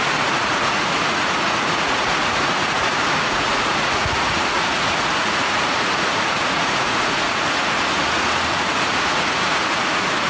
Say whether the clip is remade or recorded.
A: remade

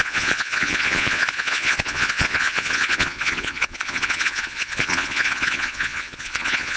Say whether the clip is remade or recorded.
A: remade